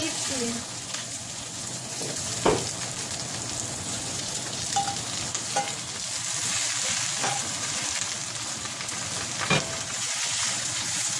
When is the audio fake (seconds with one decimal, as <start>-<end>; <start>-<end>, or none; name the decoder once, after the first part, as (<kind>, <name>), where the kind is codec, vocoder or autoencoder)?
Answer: 0.0-2.3 (vocoder, Vocos); 3.7-4.6; 9.9-11.2